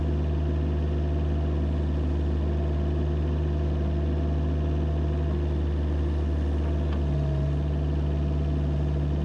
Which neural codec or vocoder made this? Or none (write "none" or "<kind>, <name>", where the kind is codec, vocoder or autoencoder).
none